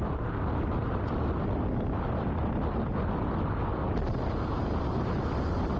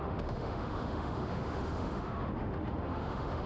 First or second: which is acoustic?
first